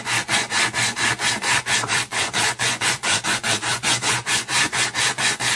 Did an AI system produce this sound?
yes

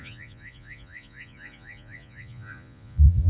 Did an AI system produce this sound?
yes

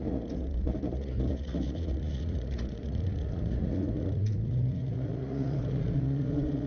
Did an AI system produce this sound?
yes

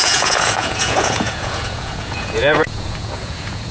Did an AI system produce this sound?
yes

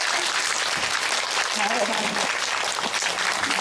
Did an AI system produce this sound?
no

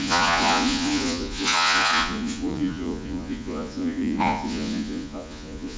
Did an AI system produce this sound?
yes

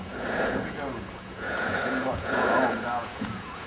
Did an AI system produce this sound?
yes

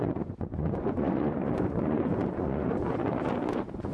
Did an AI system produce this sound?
yes